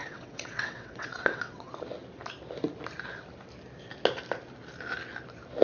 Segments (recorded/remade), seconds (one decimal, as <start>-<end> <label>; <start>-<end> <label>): 0.0-1.7 remade; 1.7-5.6 recorded